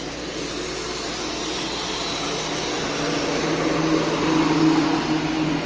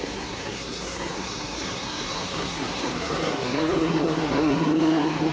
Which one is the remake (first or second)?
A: second